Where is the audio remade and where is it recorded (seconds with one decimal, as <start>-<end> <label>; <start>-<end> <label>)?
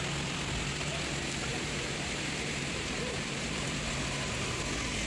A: 0.0-1.5 recorded; 1.5-4.6 remade; 4.6-5.1 recorded